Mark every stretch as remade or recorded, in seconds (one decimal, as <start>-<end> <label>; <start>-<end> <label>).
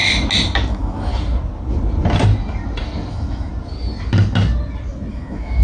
0.0-0.7 recorded; 0.7-1.1 remade; 1.1-3.1 recorded; 3.1-3.5 remade; 3.5-5.1 recorded; 5.1-5.6 remade